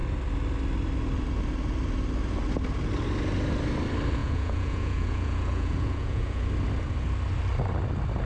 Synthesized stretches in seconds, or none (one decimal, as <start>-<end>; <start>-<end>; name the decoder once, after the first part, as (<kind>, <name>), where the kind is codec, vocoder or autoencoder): 4.2-6.5 (vocoder, Vocos)